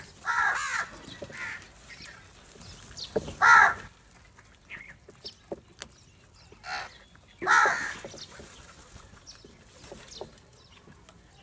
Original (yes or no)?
yes